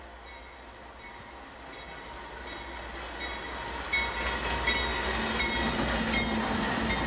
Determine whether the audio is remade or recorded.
recorded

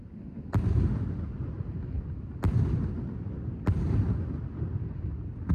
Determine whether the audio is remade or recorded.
recorded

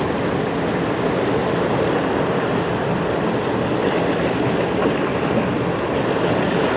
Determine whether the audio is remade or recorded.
recorded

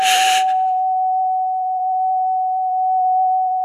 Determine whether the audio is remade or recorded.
remade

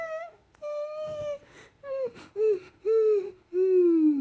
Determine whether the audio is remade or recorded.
remade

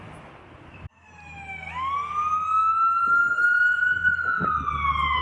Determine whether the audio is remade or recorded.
recorded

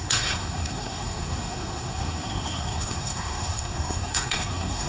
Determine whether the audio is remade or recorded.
remade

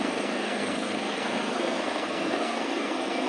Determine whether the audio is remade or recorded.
remade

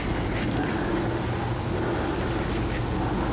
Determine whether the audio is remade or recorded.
recorded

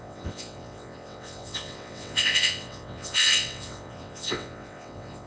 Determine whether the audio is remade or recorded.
remade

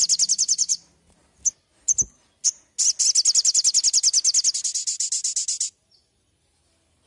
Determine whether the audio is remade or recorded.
recorded